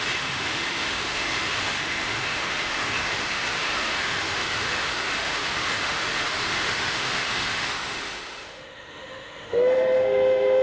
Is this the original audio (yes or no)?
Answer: no